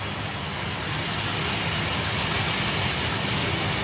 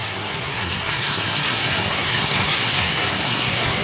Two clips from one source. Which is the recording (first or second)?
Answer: first